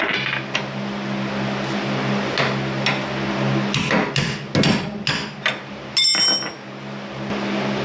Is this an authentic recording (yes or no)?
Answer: yes